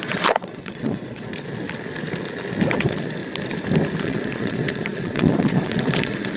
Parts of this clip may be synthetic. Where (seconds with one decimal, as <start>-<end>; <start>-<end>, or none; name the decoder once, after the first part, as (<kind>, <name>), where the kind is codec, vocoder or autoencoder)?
0.0-1.3 (vocoder, Vocos); 2.8-3.2; 4.0-6.4